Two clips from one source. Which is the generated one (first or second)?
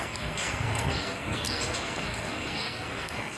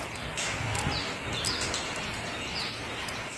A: first